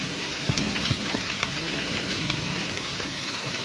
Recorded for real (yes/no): no